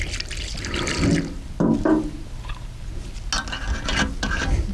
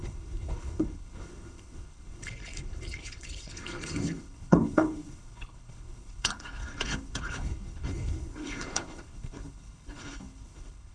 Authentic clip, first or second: first